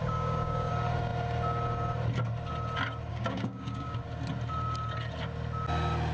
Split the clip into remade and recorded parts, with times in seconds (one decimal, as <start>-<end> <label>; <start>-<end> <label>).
0.0-0.7 remade; 0.7-3.1 recorded; 3.1-4.0 remade; 4.0-6.1 recorded